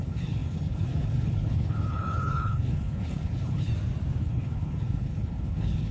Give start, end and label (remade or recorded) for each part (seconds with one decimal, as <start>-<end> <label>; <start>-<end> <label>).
0.0-3.7 remade; 3.7-4.2 recorded; 4.2-5.9 remade